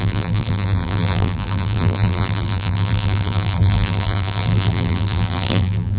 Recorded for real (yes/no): no